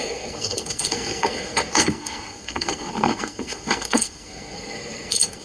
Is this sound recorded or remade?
remade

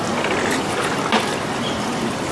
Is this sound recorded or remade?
recorded